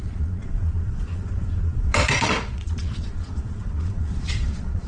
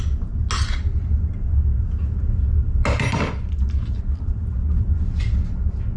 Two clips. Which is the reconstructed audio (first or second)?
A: first